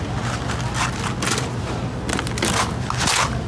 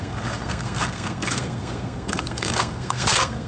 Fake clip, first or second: second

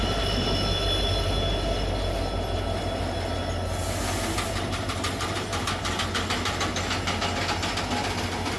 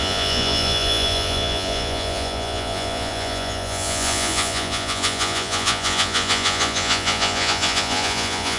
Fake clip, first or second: second